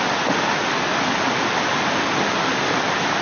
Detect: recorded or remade recorded